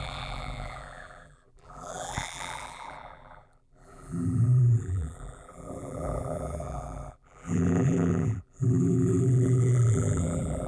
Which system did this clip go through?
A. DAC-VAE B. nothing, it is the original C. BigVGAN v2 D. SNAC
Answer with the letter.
C